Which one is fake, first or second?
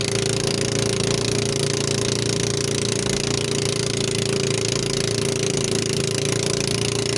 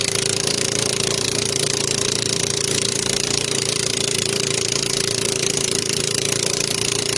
second